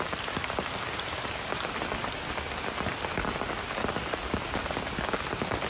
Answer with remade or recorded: recorded